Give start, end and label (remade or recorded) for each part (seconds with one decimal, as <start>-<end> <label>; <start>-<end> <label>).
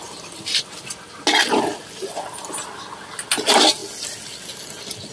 0.0-5.1 recorded